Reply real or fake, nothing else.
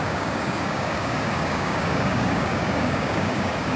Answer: fake